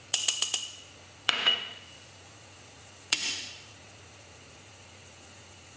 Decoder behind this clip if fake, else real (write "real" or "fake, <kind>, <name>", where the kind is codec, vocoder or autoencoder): fake, vocoder, Vocos